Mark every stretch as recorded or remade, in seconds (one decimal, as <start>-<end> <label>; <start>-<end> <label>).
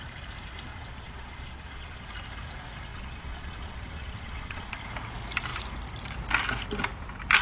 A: 0.0-0.7 recorded; 0.7-2.1 remade; 2.1-2.9 recorded; 2.9-4.7 remade; 4.7-7.4 recorded